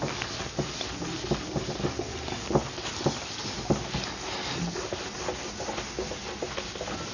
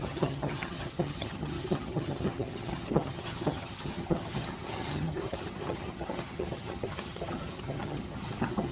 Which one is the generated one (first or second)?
second